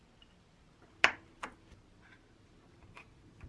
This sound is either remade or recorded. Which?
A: recorded